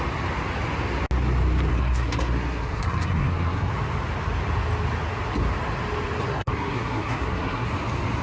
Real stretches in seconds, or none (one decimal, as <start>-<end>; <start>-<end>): 0.0-1.7; 3.7-6.3; 7.7-8.2